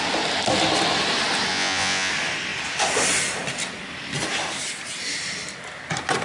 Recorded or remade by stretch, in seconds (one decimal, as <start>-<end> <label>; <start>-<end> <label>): 0.0-1.5 recorded; 1.5-2.1 remade; 2.1-6.2 recorded